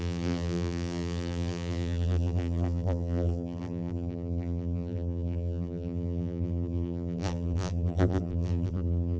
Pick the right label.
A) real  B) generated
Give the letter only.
B